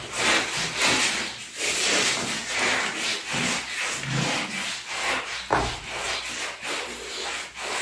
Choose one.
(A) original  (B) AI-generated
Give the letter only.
A